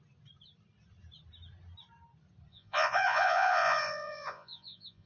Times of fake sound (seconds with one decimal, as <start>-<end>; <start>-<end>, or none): 2.5-5.1